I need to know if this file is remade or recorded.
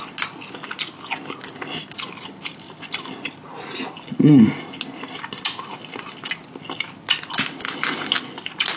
recorded